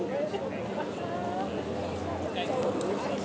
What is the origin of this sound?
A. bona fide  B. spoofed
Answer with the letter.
A